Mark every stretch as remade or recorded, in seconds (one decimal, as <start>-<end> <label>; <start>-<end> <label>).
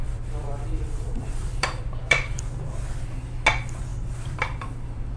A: 0.0-2.4 remade; 2.4-3.9 recorded; 3.9-5.2 remade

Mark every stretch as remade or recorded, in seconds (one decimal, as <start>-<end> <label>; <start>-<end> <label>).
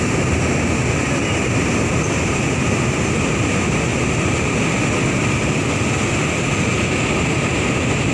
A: 0.0-3.9 recorded; 3.9-4.6 remade; 4.6-8.1 recorded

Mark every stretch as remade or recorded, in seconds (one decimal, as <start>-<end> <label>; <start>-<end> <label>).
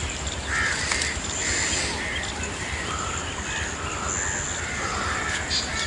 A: 0.0-3.1 remade; 3.1-5.9 recorded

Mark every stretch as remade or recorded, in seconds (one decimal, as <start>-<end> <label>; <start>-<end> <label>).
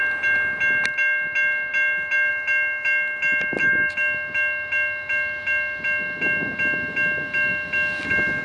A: 0.0-8.4 recorded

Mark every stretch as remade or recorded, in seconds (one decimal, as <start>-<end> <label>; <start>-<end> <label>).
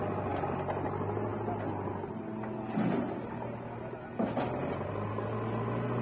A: 0.0-6.0 recorded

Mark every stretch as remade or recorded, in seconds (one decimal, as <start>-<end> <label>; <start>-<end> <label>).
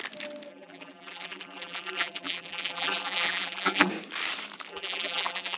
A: 0.0-0.5 recorded; 0.5-3.9 remade; 3.9-4.7 recorded; 4.7-5.6 remade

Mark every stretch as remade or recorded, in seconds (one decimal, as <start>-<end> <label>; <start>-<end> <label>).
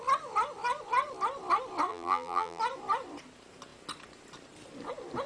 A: 0.0-1.9 recorded; 1.9-2.6 remade; 2.6-5.3 recorded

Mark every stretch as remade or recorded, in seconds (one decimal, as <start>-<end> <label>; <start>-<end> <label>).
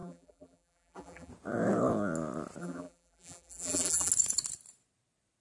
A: 0.0-1.3 remade; 1.3-2.6 recorded; 2.6-4.1 remade; 4.1-5.4 recorded